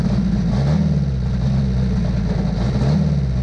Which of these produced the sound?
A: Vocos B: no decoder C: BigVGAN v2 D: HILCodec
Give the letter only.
B